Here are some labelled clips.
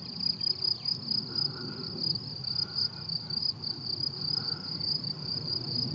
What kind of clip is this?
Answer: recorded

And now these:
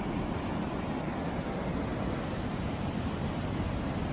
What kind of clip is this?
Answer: recorded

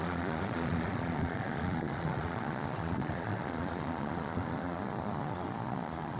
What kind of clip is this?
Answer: remade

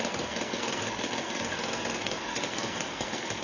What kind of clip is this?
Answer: remade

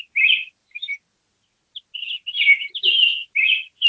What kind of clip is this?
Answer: recorded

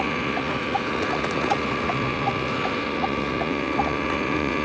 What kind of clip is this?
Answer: remade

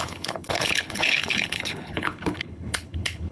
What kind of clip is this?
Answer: remade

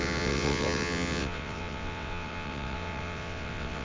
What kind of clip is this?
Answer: remade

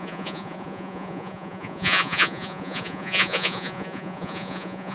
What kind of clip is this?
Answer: remade